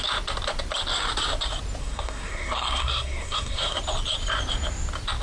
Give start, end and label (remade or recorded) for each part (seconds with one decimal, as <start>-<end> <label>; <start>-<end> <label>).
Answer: 0.0-1.8 recorded; 1.8-3.8 remade; 3.8-5.2 recorded